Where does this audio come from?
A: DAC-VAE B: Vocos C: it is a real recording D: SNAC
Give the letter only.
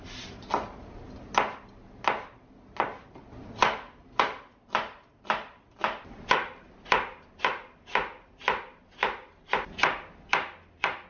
C